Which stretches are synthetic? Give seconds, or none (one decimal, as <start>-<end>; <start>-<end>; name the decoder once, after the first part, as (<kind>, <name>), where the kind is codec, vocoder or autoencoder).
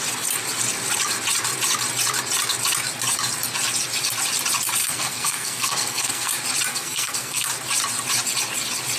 4.8-6.3 (codec, SNAC); 6.7-7.5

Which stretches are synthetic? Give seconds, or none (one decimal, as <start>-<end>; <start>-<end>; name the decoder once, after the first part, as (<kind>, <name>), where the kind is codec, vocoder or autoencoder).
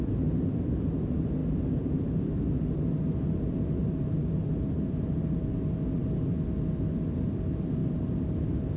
none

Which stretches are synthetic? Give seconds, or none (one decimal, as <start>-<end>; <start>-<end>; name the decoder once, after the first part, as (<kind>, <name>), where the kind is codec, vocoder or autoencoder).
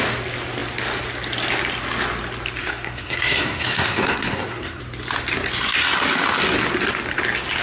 2.6-4.8 (codec, SNAC)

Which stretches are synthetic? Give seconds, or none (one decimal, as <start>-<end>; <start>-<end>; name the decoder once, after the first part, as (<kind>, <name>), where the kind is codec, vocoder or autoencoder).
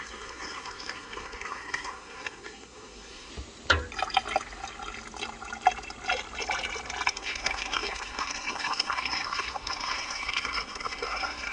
0.0-3.3 (codec, SNAC); 7.1-11.5